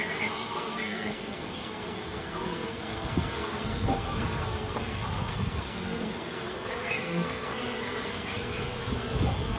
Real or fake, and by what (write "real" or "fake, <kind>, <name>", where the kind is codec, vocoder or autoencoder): fake, codec, SNAC